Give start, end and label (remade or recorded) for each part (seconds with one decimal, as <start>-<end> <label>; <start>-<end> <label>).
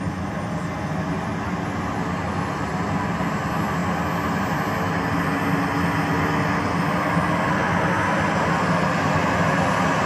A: 0.0-10.1 recorded